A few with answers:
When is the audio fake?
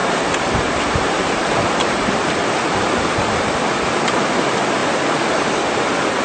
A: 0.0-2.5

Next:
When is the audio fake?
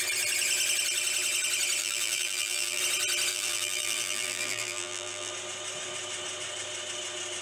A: 1.8-2.8; 3.3-5.3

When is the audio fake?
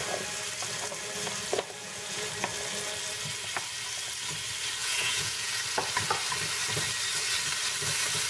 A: 1.8-2.3; 4.8-5.6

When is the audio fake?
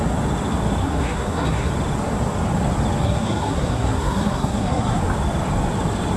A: 0.8-1.7; 3.0-5.0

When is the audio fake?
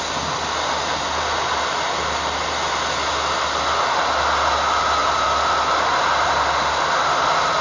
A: 5.0-6.3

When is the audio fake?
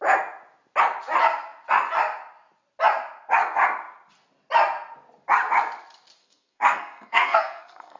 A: 6.2-8.0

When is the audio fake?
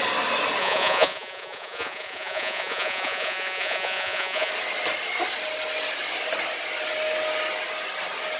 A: 0.6-4.5